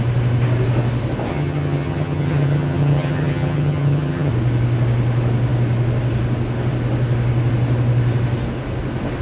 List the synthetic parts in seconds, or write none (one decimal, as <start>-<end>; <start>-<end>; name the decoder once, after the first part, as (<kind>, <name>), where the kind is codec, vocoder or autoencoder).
1.3-4.3 (vocoder, HiFi-GAN)